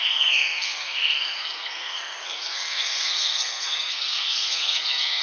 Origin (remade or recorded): remade